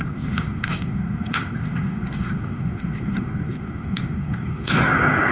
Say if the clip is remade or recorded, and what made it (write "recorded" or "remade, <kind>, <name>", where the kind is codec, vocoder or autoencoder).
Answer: remade, codec, SNAC